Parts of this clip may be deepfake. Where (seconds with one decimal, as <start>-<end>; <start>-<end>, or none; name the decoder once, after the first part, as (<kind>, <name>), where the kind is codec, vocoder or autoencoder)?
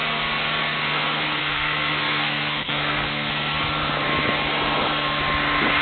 1.4-3.3 (codec, SNAC)